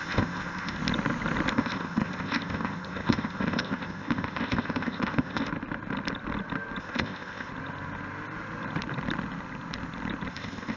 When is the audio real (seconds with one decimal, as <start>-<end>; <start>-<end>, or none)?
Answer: 0.8-1.5; 5.5-6.8; 7.5-10.3